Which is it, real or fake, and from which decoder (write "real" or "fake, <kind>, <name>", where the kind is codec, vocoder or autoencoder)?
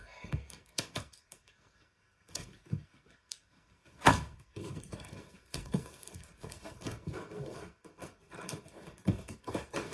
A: fake, codec, SNAC